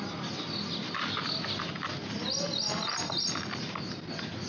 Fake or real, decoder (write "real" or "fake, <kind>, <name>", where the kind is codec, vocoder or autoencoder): real